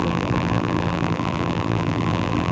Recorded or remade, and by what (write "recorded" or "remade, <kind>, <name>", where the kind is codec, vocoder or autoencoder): remade, vocoder, BigVGAN v2